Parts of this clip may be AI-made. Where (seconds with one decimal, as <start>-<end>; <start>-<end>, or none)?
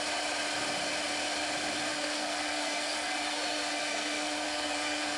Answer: 1.9-5.2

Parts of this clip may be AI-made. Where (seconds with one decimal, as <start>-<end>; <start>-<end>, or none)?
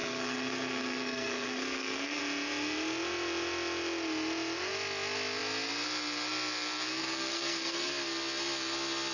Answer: 0.0-2.2; 7.0-7.9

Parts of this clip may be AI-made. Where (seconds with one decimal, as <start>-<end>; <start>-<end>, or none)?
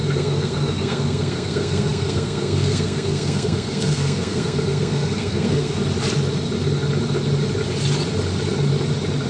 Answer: 0.0-5.8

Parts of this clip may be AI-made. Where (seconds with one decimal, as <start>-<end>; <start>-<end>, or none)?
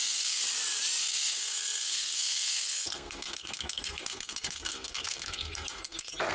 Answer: 0.0-0.4; 1.0-6.3